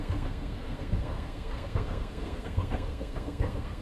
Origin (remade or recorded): remade